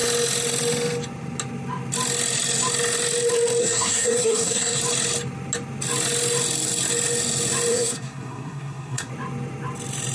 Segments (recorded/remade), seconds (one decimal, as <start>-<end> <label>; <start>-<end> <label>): 0.0-3.6 recorded; 3.6-4.8 remade; 4.8-7.7 recorded; 7.7-9.1 remade; 9.1-10.1 recorded